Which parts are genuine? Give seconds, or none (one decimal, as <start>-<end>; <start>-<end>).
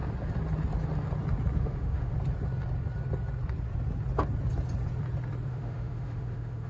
0.0-1.6; 2.1-5.5